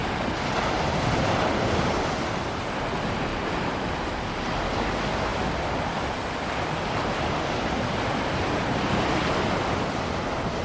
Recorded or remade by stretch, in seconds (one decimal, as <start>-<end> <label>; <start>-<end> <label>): 0.0-5.3 recorded; 5.3-10.0 remade; 10.0-10.6 recorded